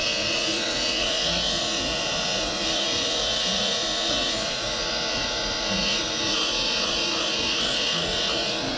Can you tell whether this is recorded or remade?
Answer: remade